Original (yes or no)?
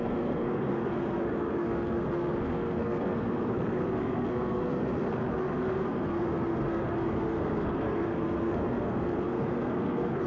no